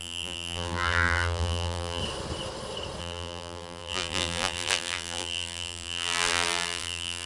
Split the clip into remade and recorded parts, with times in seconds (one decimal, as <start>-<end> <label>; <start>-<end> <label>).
0.0-2.0 remade; 2.0-3.0 recorded; 3.0-7.3 remade